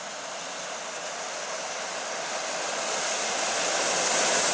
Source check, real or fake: real